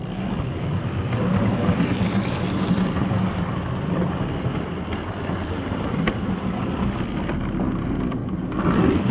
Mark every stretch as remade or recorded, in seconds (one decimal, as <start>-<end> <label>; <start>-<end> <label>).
0.0-9.1 recorded

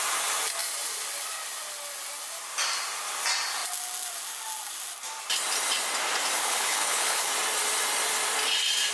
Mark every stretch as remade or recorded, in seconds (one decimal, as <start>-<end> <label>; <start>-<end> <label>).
0.0-6.4 recorded; 6.4-7.3 remade; 7.3-8.9 recorded